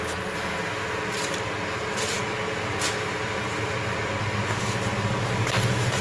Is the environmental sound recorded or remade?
recorded